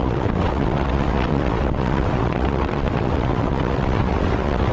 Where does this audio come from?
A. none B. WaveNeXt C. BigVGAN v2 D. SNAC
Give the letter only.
B